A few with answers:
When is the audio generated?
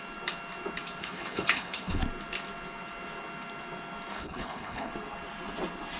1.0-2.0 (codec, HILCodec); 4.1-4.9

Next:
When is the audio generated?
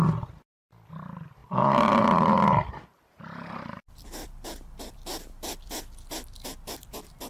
1.4-5.8 (vocoder, BigVGAN v2)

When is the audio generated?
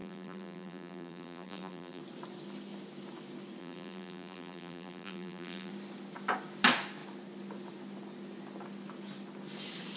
0.0-2.0 (vocoder, BigVGAN v2); 3.6-5.7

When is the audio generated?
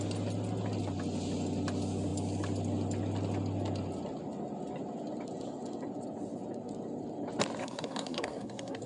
7.6-8.9 (codec, SNAC)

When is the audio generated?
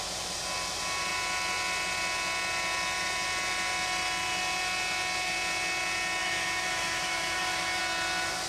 6.2-7.8 (autoencoder, DAC-VAE)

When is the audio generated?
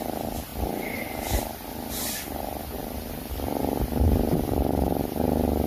0.5-1.0 (vocoder, BigVGAN v2); 2.8-3.6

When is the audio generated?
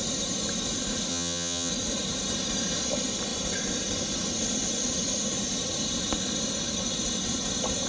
1.1-1.7 (vocoder, HiFi-GAN)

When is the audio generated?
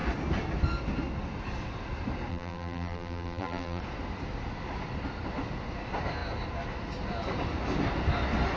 2.3-3.8 (vocoder, BigVGAN v2)